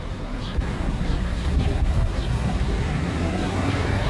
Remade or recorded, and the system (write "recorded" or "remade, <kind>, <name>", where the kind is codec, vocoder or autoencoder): remade, codec, SNAC